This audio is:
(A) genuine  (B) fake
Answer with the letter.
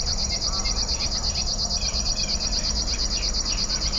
A